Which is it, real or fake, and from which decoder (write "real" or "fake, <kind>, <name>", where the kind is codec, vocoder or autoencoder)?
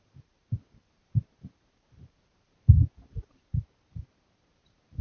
fake, vocoder, BigVGAN v2